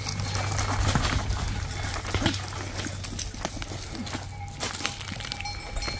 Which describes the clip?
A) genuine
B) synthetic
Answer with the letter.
A